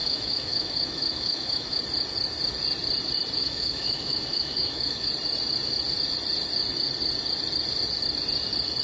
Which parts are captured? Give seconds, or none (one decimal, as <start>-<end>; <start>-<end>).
1.8-3.4; 5.1-8.8